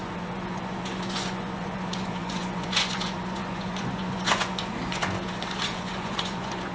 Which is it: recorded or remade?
remade